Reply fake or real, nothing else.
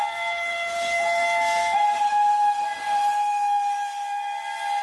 real